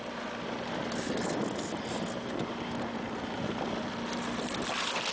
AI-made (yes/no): no